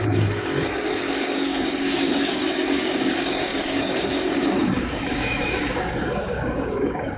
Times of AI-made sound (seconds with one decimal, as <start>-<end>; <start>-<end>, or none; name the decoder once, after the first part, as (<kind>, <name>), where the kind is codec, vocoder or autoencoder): 0.0-7.2 (codec, DAC)